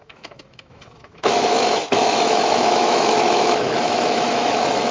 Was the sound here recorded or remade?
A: remade